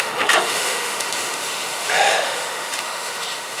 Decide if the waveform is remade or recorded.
remade